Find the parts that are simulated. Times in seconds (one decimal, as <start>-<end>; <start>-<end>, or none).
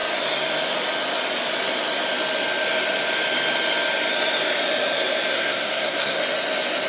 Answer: 5.3-6.2